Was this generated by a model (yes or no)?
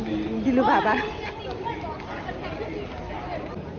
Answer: no